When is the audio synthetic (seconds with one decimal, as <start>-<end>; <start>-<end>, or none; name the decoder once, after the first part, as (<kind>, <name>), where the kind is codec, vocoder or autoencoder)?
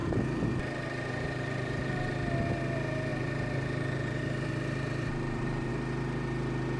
0.0-2.1 (vocoder, BigVGAN v2); 3.1-5.7